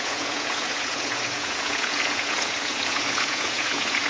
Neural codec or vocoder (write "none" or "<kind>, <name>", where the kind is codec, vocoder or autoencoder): vocoder, Vocos